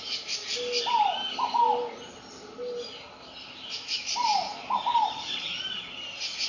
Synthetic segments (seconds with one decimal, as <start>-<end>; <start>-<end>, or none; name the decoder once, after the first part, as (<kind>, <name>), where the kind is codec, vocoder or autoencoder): 0.0-0.4 (vocoder, BigVGAN v2); 3.5-6.5